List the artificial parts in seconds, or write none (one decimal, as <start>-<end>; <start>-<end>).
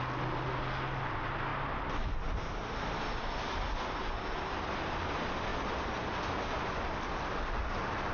none